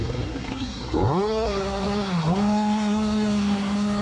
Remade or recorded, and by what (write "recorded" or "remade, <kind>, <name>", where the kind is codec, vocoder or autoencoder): remade, codec, SNAC